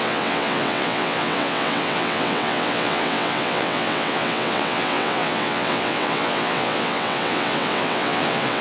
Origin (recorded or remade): remade